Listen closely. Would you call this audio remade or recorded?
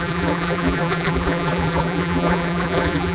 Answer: remade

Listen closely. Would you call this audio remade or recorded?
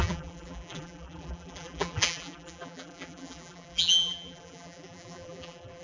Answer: remade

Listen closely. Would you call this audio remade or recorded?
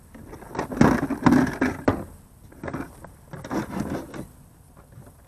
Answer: recorded